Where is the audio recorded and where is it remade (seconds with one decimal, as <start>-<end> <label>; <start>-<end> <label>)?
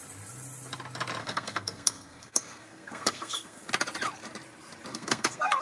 0.0-1.2 recorded; 1.2-3.7 remade; 3.7-4.9 recorded; 4.9-5.6 remade